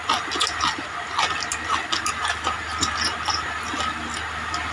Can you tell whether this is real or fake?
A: real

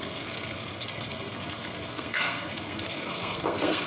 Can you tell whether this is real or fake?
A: fake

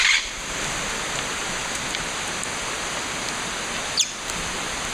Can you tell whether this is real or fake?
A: real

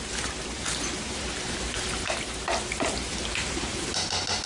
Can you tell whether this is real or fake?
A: real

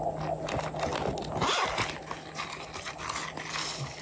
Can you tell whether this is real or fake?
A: real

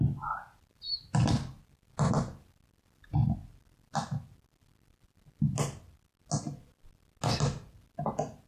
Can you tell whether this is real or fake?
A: real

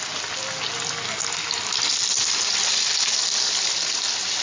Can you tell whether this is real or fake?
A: real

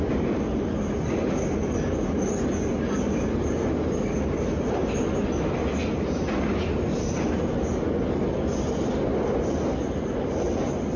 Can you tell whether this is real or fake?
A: real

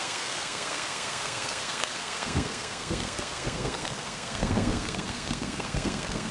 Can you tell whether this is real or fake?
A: fake